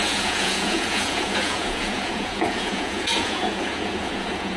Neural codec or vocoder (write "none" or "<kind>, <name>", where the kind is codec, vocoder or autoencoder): vocoder, Vocos